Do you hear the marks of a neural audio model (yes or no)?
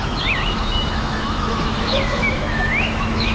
yes